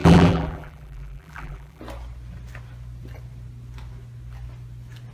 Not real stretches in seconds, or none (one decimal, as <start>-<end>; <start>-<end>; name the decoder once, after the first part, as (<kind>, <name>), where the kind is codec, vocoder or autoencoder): 0.0-1.8 (vocoder, BigVGAN v2)